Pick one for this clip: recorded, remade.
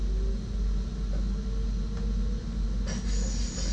recorded